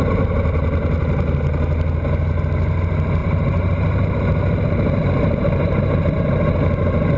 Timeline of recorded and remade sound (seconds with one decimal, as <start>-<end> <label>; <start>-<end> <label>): 0.0-3.2 recorded; 3.2-6.2 remade; 6.2-7.2 recorded